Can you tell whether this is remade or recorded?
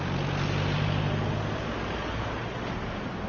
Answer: recorded